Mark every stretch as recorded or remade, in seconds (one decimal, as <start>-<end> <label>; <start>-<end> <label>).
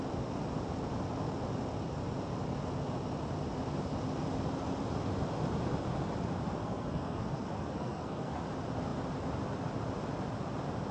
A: 0.0-6.6 recorded; 6.6-8.4 remade; 8.4-10.9 recorded